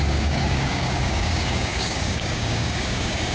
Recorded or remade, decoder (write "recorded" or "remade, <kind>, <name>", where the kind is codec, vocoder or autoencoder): remade, codec, DAC